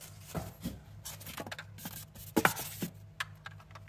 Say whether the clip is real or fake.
real